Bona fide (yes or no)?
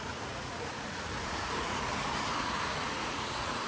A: no